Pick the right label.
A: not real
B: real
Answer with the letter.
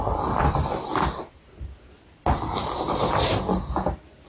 B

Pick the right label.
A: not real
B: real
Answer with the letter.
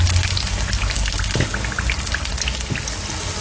B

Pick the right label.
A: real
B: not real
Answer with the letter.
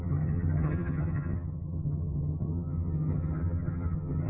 B